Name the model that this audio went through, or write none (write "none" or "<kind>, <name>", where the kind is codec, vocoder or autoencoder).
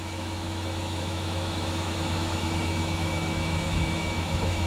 autoencoder, DAC-VAE